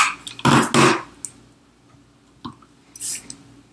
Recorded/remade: recorded